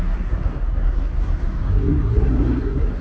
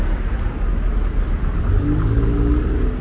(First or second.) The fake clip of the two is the first